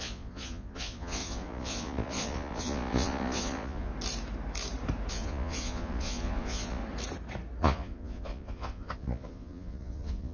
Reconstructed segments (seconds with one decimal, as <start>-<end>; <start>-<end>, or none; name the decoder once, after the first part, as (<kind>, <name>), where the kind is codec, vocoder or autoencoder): 0.0-3.9 (vocoder, Vocos); 5.1-6.8; 7.6-10.3